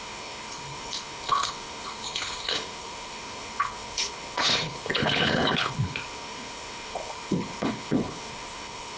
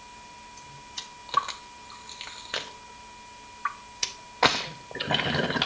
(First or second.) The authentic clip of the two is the second